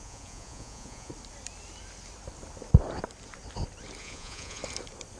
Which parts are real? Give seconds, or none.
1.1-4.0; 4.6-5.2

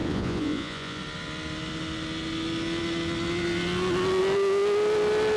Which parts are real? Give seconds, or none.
1.0-5.4

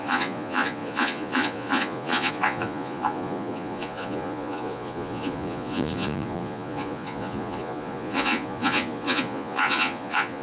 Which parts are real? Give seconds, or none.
none

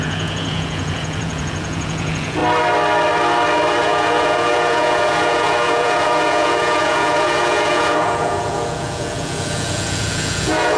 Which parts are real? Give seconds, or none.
2.4-3.8